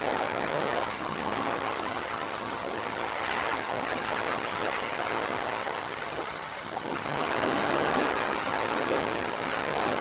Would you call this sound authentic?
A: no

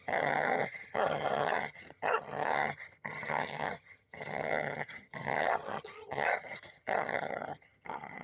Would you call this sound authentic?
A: no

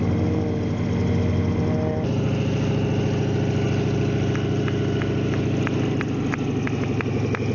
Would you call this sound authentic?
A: yes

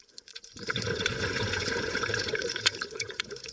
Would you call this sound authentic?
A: no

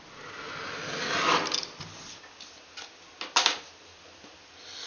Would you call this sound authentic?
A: yes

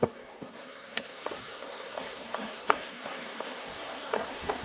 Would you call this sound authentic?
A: no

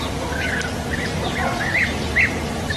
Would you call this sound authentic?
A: yes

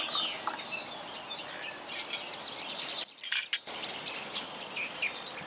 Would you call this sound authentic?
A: yes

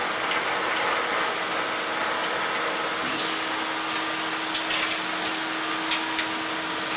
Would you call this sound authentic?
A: yes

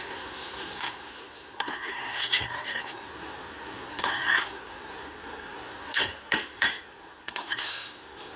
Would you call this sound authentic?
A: no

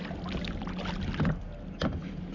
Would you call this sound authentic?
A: yes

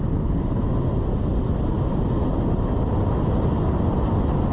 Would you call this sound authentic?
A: yes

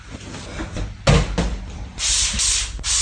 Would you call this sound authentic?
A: yes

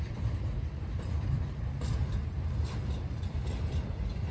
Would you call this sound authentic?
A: no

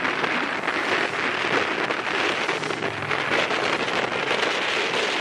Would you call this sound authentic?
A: yes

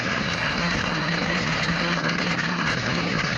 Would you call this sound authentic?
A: no